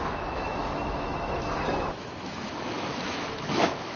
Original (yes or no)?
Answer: no